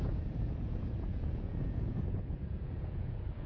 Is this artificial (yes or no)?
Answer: yes